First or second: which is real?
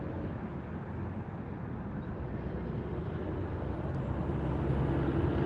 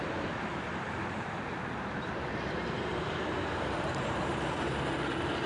first